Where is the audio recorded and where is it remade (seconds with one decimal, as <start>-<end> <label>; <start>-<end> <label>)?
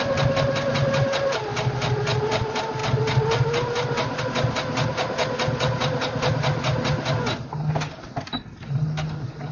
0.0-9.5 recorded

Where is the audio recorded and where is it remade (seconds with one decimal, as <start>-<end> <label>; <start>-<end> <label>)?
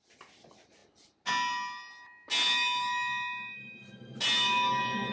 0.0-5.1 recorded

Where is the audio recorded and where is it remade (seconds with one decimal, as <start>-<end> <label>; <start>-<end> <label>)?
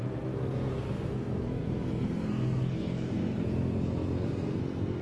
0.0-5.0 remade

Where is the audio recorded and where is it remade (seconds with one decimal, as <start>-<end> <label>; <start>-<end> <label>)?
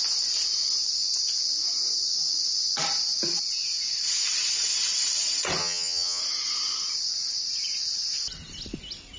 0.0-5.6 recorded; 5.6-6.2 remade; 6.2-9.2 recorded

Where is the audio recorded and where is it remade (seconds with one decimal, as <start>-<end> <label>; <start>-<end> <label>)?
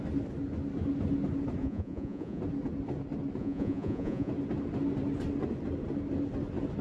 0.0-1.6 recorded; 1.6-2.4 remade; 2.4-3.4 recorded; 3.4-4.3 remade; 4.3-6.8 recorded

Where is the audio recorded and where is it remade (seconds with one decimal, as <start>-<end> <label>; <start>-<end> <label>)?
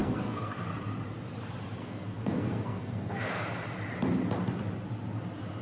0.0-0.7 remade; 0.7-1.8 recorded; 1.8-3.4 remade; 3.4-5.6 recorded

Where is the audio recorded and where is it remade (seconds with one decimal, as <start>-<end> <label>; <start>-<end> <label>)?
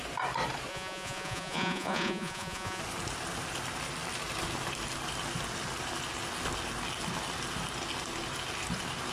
0.0-0.7 recorded; 0.7-2.8 remade; 2.8-9.1 recorded